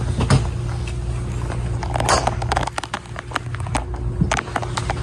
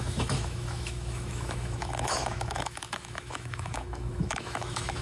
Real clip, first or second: first